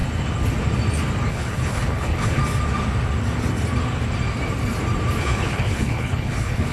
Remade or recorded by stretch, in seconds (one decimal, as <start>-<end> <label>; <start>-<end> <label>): 0.0-1.3 recorded; 1.3-2.4 remade; 2.4-5.2 recorded; 5.2-6.7 remade